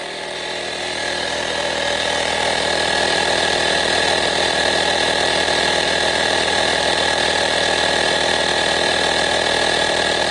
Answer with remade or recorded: remade